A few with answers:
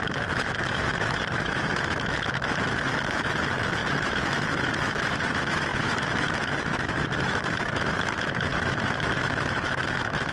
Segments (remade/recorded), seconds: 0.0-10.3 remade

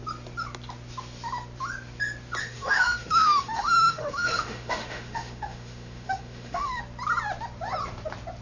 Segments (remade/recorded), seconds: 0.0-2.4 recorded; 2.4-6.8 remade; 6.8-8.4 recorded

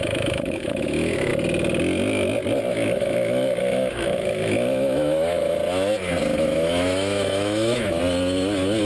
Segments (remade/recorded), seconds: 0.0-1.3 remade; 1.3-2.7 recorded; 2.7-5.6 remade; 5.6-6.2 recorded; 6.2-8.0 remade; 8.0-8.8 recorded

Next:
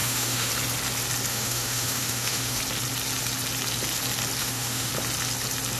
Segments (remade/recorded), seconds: 0.0-0.5 remade; 0.5-1.3 recorded; 1.3-2.6 remade; 2.6-4.4 recorded; 4.4-4.9 remade; 4.9-5.8 recorded

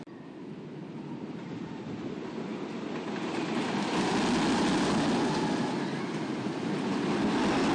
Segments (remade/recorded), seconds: 0.0-7.7 recorded